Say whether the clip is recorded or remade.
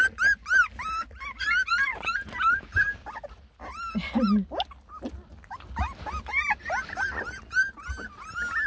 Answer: recorded